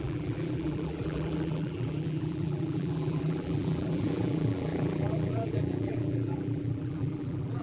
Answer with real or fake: fake